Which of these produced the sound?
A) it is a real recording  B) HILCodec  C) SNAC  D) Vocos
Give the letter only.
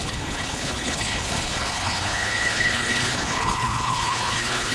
B